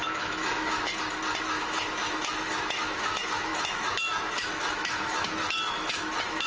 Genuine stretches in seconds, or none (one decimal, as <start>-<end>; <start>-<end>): 0.9-1.4